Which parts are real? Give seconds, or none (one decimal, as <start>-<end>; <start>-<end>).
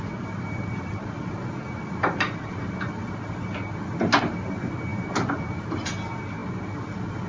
0.0-7.3